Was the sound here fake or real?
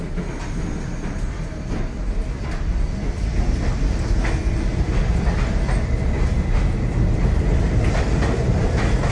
real